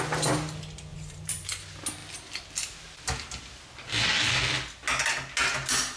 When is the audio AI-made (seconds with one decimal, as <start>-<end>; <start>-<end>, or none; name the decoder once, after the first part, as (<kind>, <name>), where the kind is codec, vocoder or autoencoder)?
0.9-1.5 (vocoder, BigVGAN v2)